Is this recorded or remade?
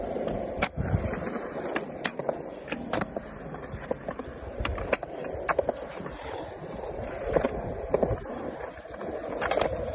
remade